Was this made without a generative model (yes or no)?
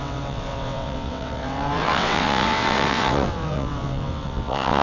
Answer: no